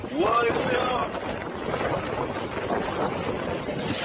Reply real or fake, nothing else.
real